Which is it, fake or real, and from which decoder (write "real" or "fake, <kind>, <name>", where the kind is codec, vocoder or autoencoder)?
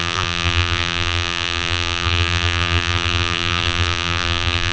fake, vocoder, BigVGAN v2